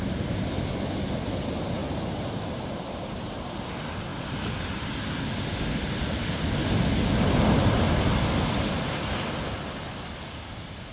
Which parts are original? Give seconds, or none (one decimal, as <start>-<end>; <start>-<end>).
0.0-1.8; 3.5-10.9